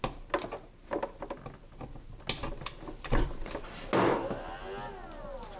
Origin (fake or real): real